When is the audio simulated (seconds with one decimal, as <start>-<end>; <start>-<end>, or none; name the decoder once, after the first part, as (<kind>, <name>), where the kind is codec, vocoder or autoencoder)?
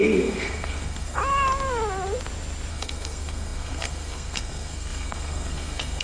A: 0.0-1.2 (codec, SNAC); 2.7-6.0